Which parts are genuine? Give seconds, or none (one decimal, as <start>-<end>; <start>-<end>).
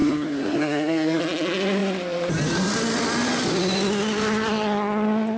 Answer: 1.2-5.4